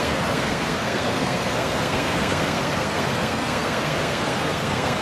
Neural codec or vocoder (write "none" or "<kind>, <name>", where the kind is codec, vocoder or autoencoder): codec, SNAC